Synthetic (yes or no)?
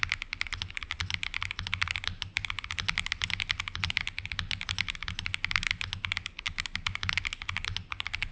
no